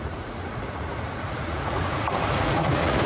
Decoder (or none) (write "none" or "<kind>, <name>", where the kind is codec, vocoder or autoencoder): vocoder, Vocos